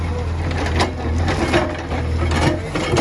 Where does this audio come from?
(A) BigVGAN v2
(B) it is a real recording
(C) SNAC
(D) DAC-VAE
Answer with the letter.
B